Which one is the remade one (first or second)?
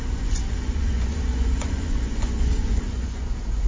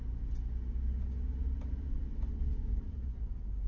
first